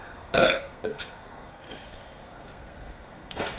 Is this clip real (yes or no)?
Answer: no